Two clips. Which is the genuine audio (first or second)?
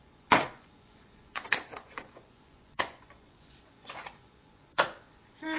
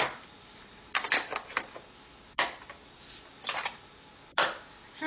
second